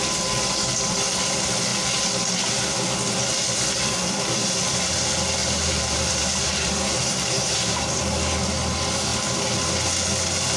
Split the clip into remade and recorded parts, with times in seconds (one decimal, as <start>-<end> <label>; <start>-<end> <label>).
0.0-5.4 recorded; 5.4-8.0 remade; 8.0-10.6 recorded